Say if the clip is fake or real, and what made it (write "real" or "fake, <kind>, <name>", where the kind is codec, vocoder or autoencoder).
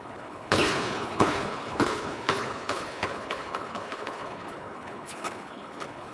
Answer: fake, codec, HILCodec